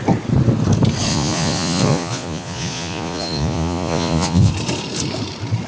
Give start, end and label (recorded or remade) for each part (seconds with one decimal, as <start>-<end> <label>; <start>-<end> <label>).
0.0-1.1 recorded; 1.1-4.5 remade; 4.5-5.7 recorded